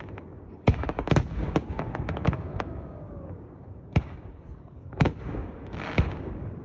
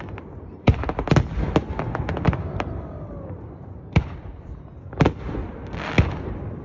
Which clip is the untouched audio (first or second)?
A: second